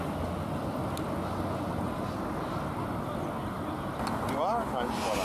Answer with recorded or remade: recorded